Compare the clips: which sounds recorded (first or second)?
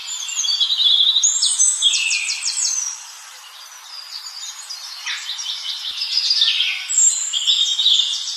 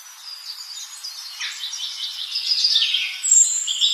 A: second